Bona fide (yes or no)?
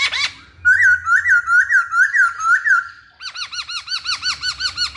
yes